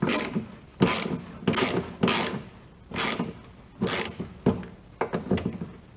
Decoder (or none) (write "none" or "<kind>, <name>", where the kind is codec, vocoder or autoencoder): none